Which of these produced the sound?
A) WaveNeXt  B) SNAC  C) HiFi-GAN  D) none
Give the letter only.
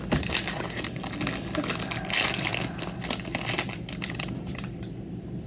D